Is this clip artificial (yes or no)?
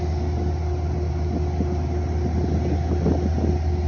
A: no